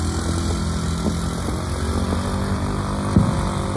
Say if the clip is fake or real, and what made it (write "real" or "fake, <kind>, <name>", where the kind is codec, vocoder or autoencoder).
real